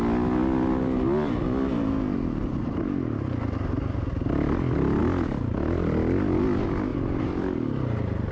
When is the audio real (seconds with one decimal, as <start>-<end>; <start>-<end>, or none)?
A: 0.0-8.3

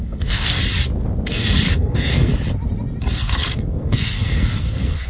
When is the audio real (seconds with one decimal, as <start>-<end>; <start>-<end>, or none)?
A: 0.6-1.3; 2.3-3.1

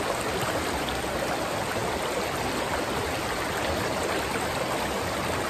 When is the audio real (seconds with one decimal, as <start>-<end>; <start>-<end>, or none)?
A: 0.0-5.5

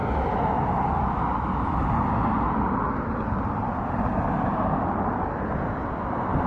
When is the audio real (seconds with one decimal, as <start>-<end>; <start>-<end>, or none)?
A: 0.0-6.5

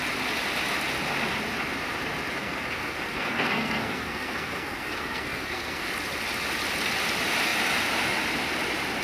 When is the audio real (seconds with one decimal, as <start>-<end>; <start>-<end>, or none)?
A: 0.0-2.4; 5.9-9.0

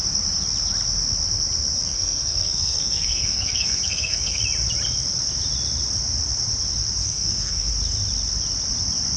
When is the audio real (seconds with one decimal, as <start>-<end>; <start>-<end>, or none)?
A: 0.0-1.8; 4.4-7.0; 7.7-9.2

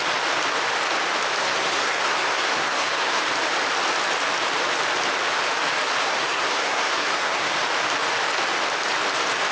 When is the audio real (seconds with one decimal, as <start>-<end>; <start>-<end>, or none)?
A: 0.0-1.4; 3.2-6.0; 7.5-9.5

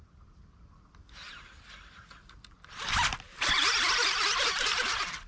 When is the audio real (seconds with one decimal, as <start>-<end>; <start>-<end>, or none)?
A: 0.0-5.3